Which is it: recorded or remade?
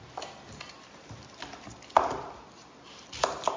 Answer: recorded